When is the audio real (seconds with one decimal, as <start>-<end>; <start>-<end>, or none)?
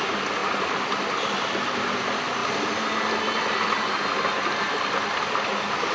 0.0-5.9